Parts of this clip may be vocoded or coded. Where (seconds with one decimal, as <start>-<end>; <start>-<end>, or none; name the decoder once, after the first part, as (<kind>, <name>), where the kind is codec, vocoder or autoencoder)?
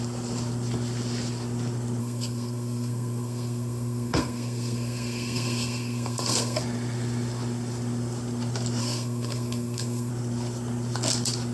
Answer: 2.0-6.6 (codec, SNAC); 8.8-10.1